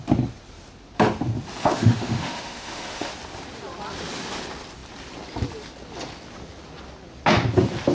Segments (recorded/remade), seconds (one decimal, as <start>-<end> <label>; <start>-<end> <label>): 0.0-1.6 recorded; 1.6-3.1 remade; 3.1-7.9 recorded